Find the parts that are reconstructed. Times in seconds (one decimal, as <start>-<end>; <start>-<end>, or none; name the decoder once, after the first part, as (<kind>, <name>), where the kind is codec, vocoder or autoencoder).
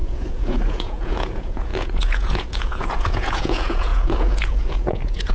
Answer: 0.0-5.3 (vocoder, Vocos)